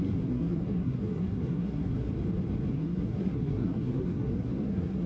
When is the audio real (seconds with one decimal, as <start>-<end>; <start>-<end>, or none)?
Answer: 2.1-2.7